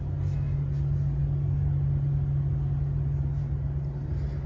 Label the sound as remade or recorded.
recorded